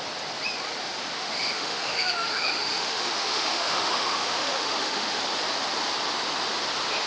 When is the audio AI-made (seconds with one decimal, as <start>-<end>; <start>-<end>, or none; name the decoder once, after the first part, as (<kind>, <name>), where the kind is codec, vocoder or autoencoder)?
1.1-5.2 (autoencoder, DAC-VAE)